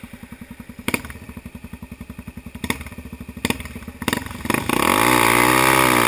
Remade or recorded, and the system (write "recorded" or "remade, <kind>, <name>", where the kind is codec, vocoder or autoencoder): recorded